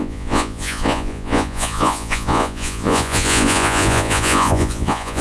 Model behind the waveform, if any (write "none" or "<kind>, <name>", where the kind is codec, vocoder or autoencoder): vocoder, Vocos